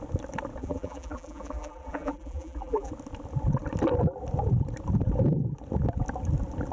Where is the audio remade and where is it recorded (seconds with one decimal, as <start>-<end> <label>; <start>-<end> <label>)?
0.0-0.6 recorded; 0.6-2.9 remade; 2.9-6.7 recorded